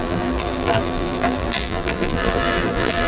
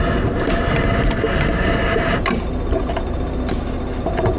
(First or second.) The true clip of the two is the second